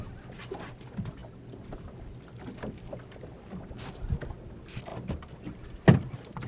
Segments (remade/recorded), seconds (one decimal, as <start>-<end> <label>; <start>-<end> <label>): 0.0-6.5 recorded